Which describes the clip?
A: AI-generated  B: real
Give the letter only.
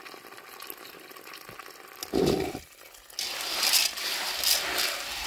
B